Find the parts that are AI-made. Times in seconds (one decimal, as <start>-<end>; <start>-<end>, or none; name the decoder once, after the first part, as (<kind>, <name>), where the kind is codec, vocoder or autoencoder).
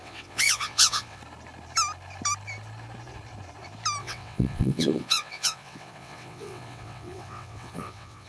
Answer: 0.0-1.2 (vocoder, WaveNeXt); 4.0-8.3